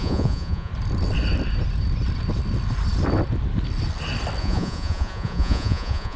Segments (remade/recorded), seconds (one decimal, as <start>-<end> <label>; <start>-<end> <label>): 0.0-0.7 remade; 0.7-4.4 recorded; 4.4-6.2 remade

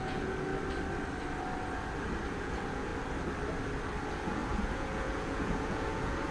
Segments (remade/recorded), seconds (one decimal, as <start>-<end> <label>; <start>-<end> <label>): 0.0-0.5 remade; 0.5-2.3 recorded; 2.3-2.9 remade; 2.9-4.0 recorded; 4.0-6.3 remade

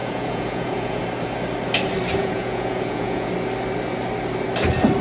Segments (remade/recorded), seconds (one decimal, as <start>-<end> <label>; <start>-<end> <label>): 0.0-1.0 remade; 1.0-2.2 recorded; 2.2-3.3 remade; 3.3-5.0 recorded

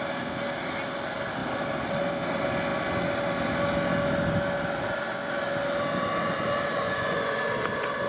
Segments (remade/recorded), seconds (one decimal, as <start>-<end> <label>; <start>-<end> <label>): 0.0-6.8 recorded; 6.8-7.4 remade; 7.4-8.1 recorded

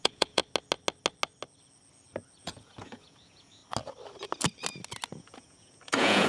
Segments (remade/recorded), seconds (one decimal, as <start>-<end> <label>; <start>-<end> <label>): 0.0-0.4 remade; 0.4-2.4 recorded; 2.4-3.6 remade; 3.6-5.1 recorded; 5.1-6.3 remade

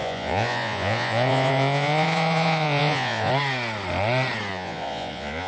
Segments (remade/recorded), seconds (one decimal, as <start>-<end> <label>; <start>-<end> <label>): 0.0-3.3 remade; 3.3-4.5 recorded; 4.5-5.5 remade

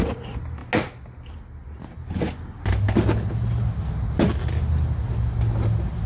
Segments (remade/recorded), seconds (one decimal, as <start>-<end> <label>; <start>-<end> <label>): 0.0-6.1 recorded